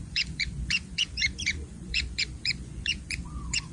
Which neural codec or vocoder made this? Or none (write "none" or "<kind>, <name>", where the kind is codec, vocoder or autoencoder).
vocoder, Vocos